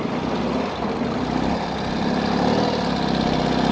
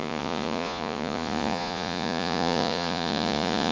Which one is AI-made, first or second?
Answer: second